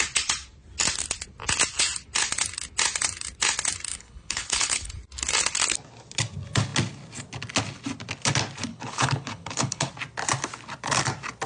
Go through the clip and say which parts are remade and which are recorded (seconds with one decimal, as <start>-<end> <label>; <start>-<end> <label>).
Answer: 0.0-3.9 recorded; 3.9-4.9 remade; 4.9-8.7 recorded; 8.7-9.9 remade; 9.9-11.5 recorded